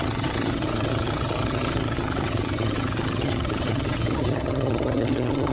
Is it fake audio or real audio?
fake